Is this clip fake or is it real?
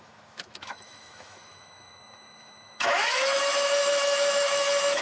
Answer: fake